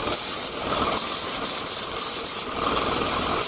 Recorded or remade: recorded